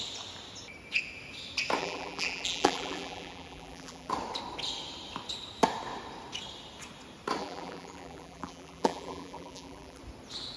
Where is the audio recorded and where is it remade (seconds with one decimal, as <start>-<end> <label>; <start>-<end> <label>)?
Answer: 0.0-1.8 recorded; 1.8-4.1 remade; 4.1-7.4 recorded; 7.4-10.0 remade; 10.0-10.6 recorded